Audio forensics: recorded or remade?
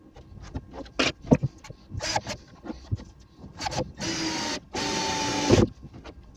recorded